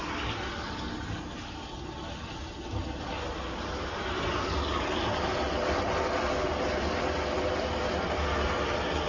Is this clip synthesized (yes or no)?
no